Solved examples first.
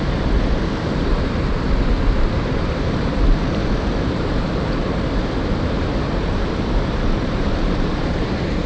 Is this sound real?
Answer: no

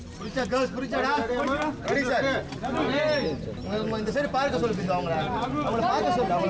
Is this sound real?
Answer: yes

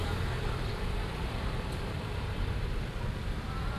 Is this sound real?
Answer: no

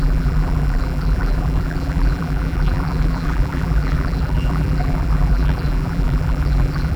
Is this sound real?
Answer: no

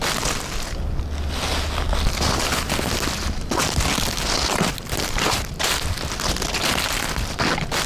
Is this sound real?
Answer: yes